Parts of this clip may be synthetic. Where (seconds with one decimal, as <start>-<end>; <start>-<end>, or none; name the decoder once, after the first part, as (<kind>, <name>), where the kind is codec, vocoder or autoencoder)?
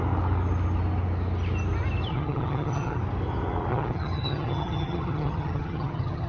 2.1-3.0 (vocoder, HiFi-GAN); 3.7-6.3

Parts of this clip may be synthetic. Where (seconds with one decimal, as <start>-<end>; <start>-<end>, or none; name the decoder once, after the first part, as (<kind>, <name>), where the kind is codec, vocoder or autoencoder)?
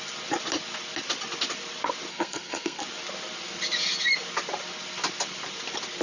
2.1-2.8 (codec, SNAC)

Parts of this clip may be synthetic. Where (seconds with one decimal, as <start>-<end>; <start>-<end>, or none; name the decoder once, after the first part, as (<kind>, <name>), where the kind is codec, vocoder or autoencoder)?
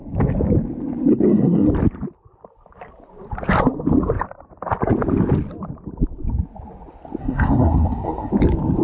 1.1-1.7 (codec, SNAC); 7.2-8.3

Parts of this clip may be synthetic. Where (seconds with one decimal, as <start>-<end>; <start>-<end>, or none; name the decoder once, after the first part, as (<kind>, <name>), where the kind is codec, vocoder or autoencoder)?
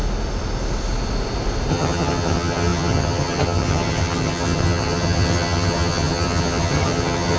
1.7-7.4 (vocoder, HiFi-GAN)